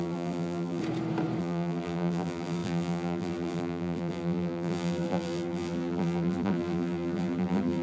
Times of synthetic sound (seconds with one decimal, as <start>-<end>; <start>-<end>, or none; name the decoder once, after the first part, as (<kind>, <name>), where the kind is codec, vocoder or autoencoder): 0.0-0.8 (vocoder, BigVGAN v2); 1.4-7.8